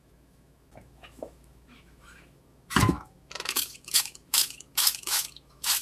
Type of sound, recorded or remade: remade